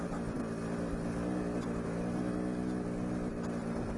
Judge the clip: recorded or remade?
recorded